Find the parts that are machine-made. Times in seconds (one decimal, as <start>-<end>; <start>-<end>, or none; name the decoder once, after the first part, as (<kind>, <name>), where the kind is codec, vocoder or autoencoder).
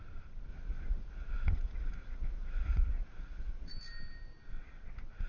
0.5-3.7 (vocoder, Vocos)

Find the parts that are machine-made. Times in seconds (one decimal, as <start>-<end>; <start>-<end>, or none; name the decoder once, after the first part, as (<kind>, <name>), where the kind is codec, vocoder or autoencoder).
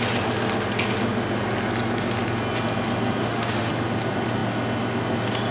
3.2-3.7 (autoencoder, DAC-VAE)